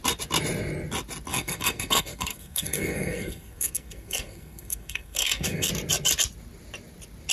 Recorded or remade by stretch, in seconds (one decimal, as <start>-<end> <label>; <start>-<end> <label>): 0.0-1.3 recorded; 1.3-5.7 remade; 5.7-7.3 recorded